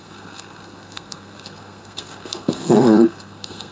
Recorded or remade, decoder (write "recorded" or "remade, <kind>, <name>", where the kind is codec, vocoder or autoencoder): remade, codec, SNAC